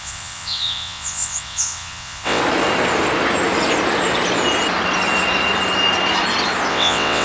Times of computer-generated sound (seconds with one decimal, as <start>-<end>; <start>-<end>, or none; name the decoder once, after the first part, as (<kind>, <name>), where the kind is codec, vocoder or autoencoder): 0.0-2.4 (vocoder, WaveNeXt); 6.7-7.2